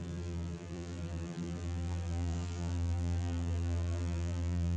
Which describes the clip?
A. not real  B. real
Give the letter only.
A